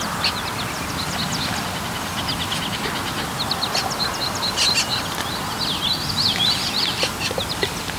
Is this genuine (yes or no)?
yes